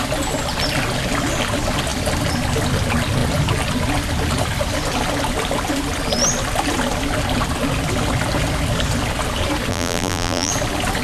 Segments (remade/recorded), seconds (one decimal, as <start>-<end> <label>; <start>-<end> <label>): 0.0-9.7 recorded; 9.7-10.5 remade; 10.5-11.0 recorded